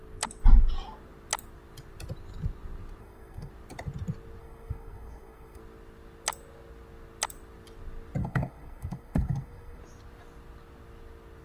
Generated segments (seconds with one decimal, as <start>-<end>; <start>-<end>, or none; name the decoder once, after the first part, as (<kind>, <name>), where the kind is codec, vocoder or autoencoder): 3.0-3.5 (codec, SNAC); 4.4-5.6; 8.2-9.8